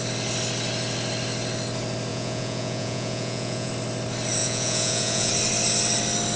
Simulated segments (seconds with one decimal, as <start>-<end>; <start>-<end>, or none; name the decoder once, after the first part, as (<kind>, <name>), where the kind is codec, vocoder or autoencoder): 2.1-3.7 (vocoder, Vocos); 4.4-5.3